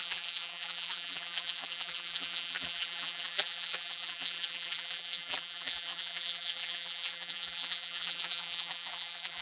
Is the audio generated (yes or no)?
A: yes